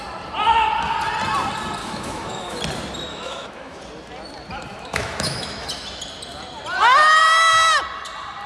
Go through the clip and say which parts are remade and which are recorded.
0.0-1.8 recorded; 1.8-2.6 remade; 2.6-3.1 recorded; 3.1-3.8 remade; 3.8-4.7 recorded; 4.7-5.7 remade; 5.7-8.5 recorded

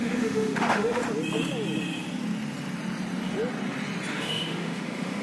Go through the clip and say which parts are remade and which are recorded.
0.0-1.0 remade; 1.0-4.1 recorded; 4.1-5.2 remade

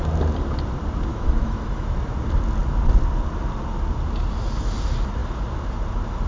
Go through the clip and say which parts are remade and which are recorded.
0.0-1.1 recorded; 1.1-2.0 remade; 2.0-6.3 recorded

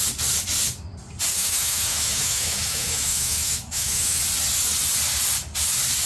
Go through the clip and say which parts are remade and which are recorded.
0.0-1.3 recorded; 1.3-4.2 remade; 4.2-6.1 recorded

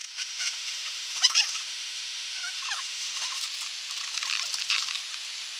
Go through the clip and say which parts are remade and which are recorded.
0.0-3.4 remade; 3.4-5.6 recorded

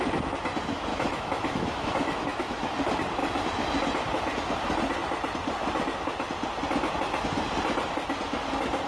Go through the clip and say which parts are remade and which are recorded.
0.0-0.9 recorded; 0.9-2.7 remade; 2.7-8.9 recorded

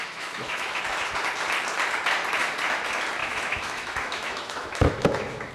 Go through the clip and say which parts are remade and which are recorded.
0.0-0.8 remade; 0.8-3.2 recorded; 3.2-5.5 remade